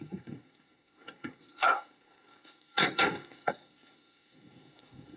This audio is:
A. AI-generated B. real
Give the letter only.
A